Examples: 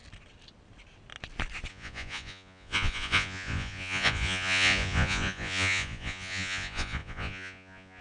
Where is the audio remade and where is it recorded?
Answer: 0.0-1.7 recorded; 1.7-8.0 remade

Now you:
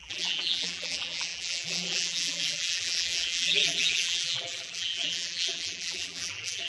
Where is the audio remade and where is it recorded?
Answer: 0.0-6.7 remade

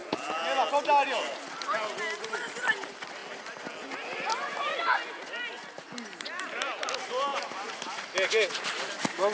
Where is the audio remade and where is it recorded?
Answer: 0.0-9.3 recorded

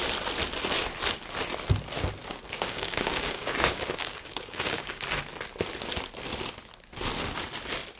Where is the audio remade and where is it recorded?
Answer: 0.0-2.2 recorded; 2.2-5.0 remade; 5.0-8.0 recorded

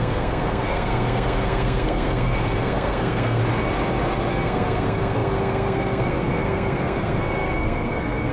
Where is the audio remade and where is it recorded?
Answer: 0.0-3.4 remade; 3.4-4.3 recorded; 4.3-8.3 remade